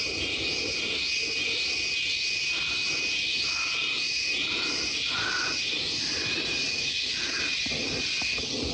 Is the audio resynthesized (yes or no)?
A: no